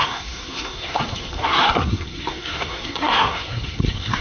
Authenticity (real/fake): fake